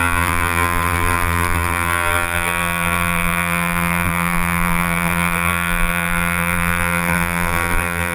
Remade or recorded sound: remade